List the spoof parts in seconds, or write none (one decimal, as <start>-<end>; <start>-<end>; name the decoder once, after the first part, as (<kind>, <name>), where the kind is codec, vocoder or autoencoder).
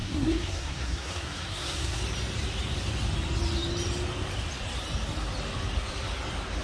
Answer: 0.0-2.0 (codec, SNAC)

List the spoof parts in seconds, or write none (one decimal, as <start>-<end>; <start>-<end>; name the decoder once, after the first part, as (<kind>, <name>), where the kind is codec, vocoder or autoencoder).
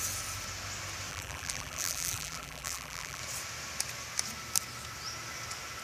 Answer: 1.1-3.2 (vocoder, BigVGAN v2)